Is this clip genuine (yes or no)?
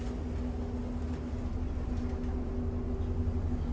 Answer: yes